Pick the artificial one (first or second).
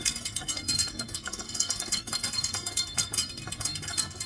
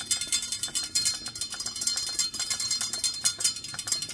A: first